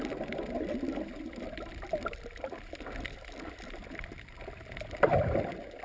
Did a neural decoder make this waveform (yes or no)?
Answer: no